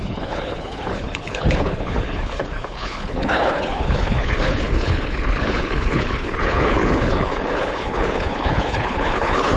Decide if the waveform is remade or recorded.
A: remade